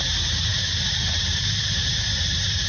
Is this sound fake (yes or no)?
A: no